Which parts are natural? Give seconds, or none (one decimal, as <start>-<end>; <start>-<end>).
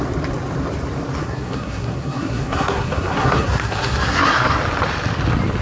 0.0-1.2; 4.6-5.6